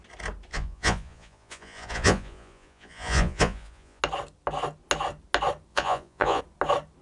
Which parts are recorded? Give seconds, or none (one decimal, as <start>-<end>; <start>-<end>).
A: 0.0-0.5; 4.0-5.7; 6.4-7.0